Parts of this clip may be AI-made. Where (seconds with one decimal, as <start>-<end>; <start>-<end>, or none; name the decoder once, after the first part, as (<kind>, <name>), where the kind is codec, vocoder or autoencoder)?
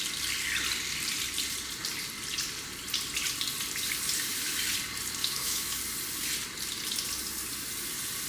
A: 5.2-5.8 (autoencoder, DAC-VAE)